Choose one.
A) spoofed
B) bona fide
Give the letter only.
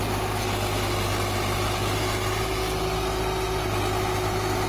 B